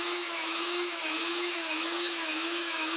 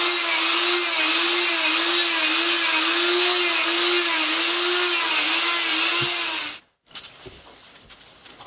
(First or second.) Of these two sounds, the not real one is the first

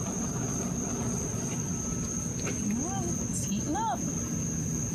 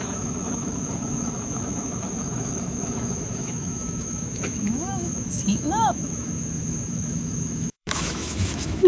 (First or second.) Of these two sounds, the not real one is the second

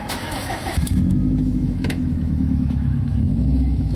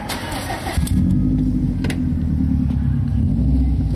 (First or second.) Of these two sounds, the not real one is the first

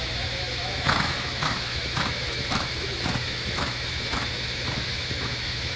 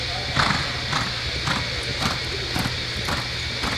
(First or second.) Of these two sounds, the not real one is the first